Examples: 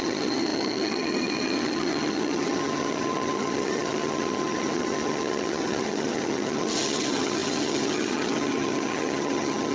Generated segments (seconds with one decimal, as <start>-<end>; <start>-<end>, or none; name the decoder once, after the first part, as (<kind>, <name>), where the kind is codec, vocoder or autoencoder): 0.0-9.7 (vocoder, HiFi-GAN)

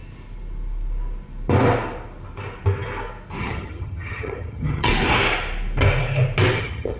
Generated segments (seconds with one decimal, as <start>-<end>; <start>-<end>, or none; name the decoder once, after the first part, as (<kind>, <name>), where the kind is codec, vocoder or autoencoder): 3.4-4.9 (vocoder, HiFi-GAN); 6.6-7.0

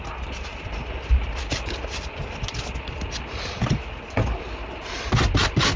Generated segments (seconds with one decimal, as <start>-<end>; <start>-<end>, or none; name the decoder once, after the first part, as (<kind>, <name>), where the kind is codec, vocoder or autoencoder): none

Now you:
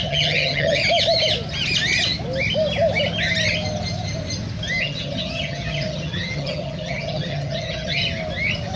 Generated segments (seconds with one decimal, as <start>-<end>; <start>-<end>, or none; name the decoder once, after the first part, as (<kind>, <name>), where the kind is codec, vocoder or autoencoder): 0.0-0.8 (vocoder, HiFi-GAN); 4.8-8.0

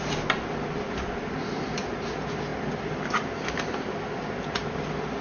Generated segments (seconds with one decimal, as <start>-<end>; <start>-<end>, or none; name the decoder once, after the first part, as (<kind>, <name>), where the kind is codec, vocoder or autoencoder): none

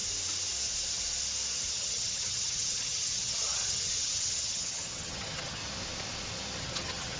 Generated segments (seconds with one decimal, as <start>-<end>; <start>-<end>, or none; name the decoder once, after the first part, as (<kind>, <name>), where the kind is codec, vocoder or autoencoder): 1.7-5.6 (vocoder, HiFi-GAN); 6.6-7.2